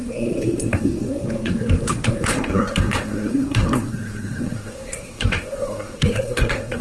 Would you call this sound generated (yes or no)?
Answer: yes